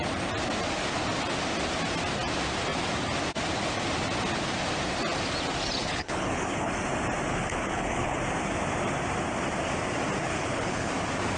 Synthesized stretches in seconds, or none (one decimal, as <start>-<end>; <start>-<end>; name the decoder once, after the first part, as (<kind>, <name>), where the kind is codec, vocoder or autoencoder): 5.8-6.7 (codec, HILCodec); 7.3-8.2; 10.3-10.9